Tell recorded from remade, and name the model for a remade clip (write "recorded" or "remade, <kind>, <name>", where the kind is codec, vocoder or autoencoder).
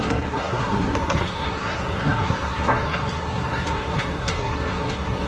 remade, codec, SNAC